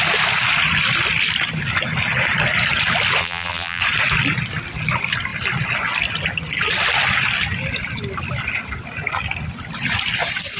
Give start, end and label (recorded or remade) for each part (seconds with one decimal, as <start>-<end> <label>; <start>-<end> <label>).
0.0-3.2 recorded; 3.2-3.8 remade; 3.8-10.6 recorded